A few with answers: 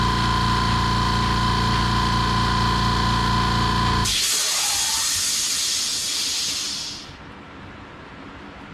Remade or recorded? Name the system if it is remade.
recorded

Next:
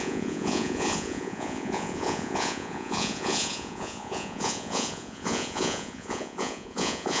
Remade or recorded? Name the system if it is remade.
remade, vocoder, Vocos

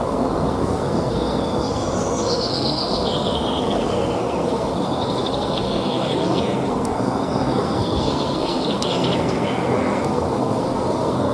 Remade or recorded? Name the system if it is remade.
remade, codec, SNAC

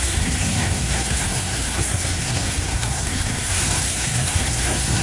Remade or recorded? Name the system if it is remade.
remade, codec, SNAC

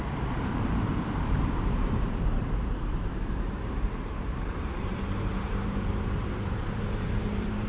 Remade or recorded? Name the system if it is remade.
remade, vocoder, BigVGAN v2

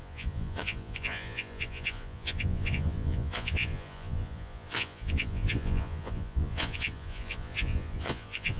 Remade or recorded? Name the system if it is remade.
remade, vocoder, Vocos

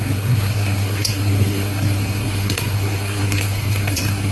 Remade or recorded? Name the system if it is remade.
remade, codec, SNAC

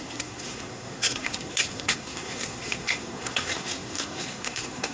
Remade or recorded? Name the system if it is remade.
remade, codec, SNAC